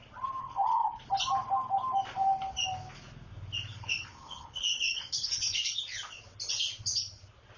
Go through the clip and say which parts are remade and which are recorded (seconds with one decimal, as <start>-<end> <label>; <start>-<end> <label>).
0.0-0.4 recorded; 0.4-1.0 remade; 1.0-3.7 recorded; 3.7-5.8 remade; 5.8-7.6 recorded